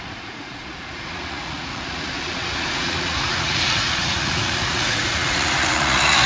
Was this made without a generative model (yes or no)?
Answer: no